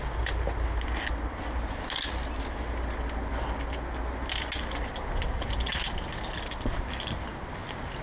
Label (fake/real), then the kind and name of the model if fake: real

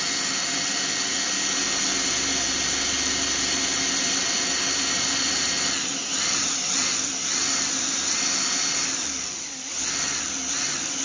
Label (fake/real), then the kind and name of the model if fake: real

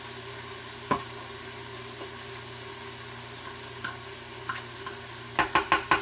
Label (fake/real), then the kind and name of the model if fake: real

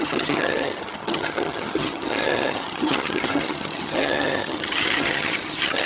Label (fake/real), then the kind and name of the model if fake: fake, vocoder, HiFi-GAN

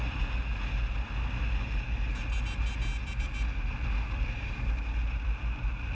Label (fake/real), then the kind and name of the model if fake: real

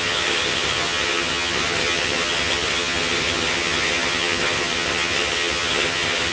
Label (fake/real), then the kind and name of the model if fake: fake, vocoder, HiFi-GAN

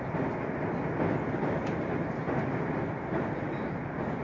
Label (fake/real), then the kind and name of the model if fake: real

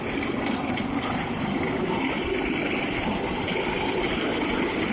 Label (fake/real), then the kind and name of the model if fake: real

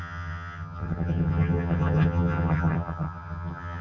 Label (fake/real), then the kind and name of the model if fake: fake, vocoder, HiFi-GAN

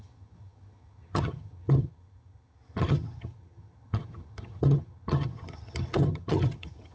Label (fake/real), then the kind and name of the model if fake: fake, vocoder, HiFi-GAN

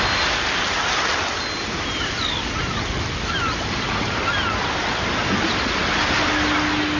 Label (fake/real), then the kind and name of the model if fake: real